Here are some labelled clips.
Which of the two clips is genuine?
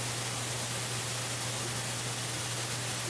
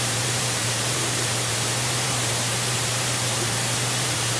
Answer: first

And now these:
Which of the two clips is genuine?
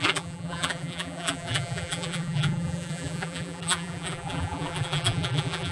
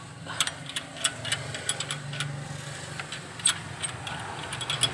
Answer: second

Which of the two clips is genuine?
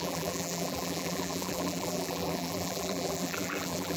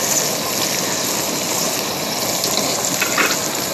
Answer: second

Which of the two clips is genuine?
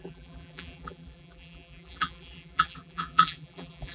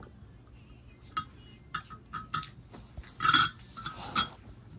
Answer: second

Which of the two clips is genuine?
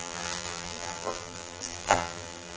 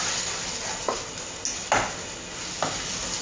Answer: second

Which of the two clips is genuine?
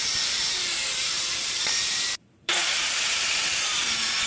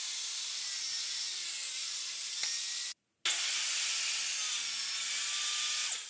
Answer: second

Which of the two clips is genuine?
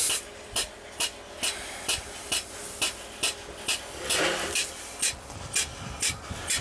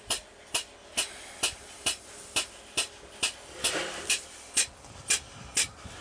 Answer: first